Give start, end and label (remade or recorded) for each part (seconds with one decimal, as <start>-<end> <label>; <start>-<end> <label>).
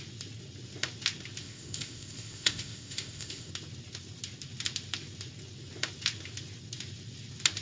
0.0-1.4 recorded; 1.4-3.5 remade; 3.5-7.6 recorded